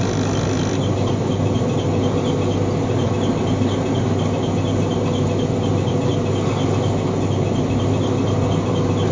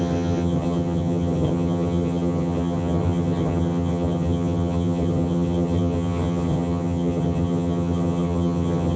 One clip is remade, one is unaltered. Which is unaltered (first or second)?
first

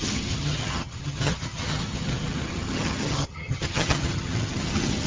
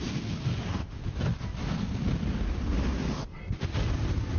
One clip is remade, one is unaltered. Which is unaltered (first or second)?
second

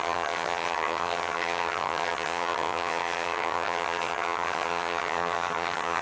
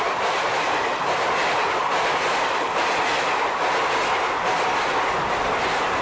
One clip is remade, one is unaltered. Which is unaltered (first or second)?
second